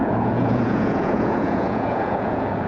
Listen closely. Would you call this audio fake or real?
fake